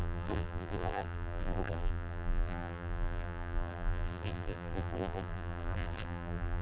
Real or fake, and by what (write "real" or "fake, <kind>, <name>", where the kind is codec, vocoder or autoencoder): fake, vocoder, BigVGAN v2